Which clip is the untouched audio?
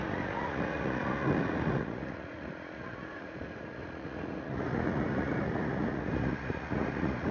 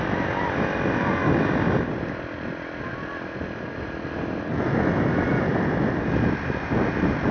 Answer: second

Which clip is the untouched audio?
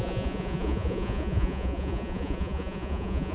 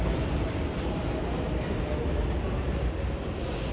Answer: second